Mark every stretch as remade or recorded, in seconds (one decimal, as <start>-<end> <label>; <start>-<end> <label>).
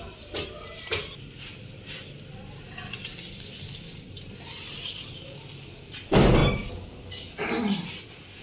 0.0-8.4 recorded